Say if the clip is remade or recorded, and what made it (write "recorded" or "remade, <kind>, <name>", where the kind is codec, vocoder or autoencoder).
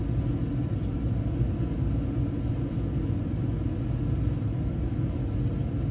recorded